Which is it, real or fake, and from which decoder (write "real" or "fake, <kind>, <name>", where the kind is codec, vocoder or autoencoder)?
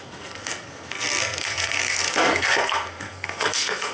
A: fake, codec, SNAC